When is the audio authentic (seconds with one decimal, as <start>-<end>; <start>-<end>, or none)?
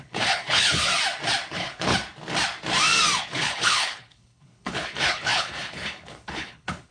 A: 0.9-1.5; 1.9-3.2